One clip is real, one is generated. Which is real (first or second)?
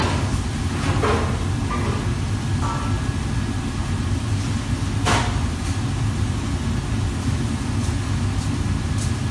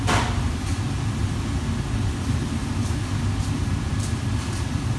first